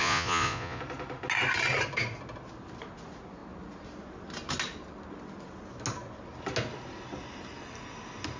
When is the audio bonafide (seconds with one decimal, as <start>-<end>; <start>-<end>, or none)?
0.8-8.4